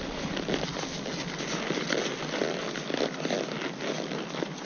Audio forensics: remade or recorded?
recorded